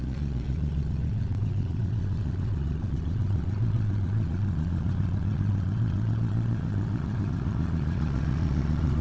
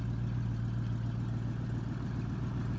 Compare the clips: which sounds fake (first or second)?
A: first